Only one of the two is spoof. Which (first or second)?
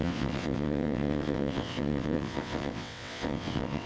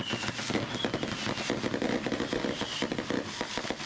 first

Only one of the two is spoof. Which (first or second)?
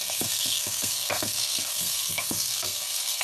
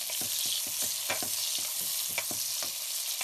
first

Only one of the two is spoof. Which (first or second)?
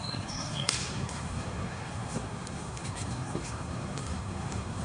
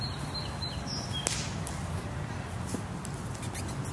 first